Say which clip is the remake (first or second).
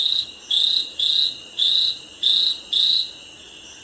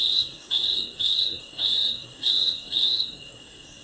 second